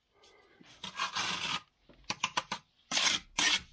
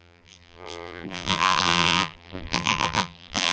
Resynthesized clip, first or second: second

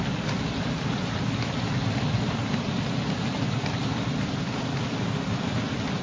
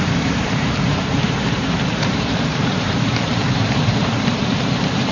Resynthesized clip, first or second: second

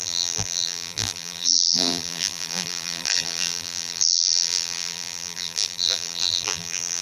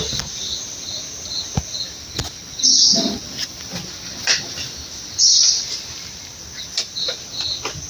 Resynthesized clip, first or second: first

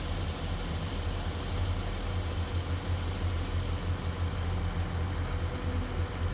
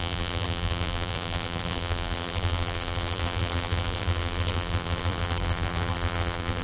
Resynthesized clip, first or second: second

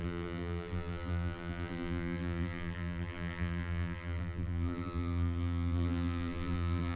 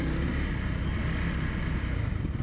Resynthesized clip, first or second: first